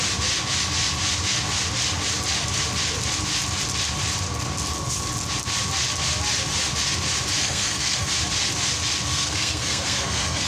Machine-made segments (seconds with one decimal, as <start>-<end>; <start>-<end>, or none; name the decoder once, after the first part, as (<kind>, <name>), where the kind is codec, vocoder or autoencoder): 7.4-8.1 (codec, SNAC); 9.1-10.5